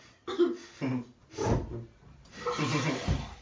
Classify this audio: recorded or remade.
recorded